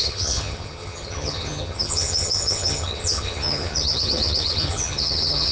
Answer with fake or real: fake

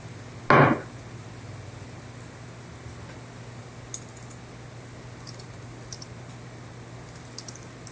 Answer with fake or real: real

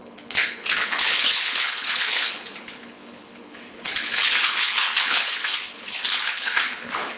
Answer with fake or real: fake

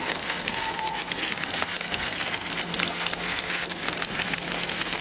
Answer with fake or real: fake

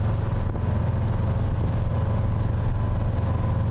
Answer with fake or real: real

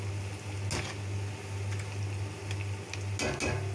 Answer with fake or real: real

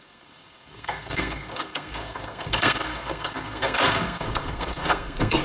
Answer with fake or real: fake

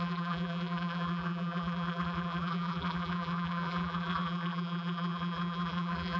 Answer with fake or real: fake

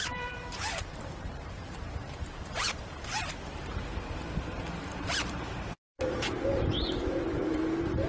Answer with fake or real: fake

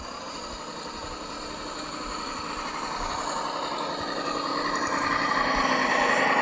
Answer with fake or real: real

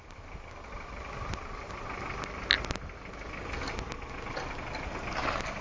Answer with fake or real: real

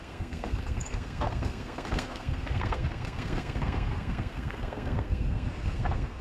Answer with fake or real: fake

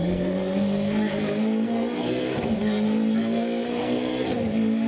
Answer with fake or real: fake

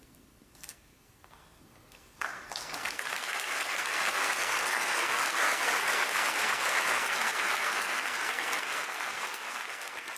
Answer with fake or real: fake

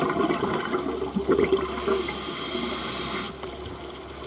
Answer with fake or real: real